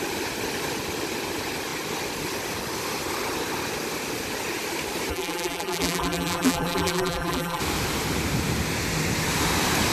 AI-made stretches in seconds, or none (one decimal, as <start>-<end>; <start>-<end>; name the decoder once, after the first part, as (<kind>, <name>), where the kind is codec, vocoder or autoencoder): 5.1-7.6 (vocoder, BigVGAN v2)